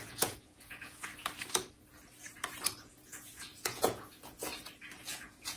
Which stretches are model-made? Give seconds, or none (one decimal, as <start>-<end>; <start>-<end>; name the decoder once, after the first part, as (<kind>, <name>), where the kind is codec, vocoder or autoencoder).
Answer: 0.0-1.1 (vocoder, Vocos); 2.8-4.5; 5.0-5.6